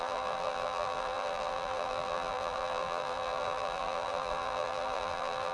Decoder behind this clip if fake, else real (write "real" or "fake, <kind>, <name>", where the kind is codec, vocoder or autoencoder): fake, vocoder, BigVGAN v2